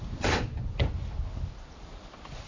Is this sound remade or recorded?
recorded